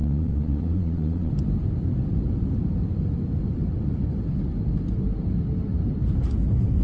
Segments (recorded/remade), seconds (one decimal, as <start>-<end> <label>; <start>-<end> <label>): 0.0-1.3 remade; 1.3-6.8 recorded